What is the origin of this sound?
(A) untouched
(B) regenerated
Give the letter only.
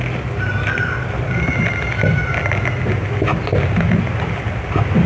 A